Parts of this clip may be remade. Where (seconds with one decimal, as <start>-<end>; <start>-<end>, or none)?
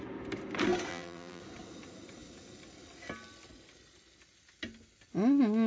0.9-1.4